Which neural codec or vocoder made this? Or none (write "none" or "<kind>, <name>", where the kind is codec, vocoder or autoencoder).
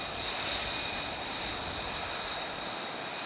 none